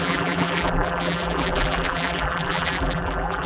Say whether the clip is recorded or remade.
remade